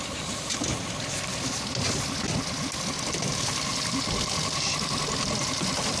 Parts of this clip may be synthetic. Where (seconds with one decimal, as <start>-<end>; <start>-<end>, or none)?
none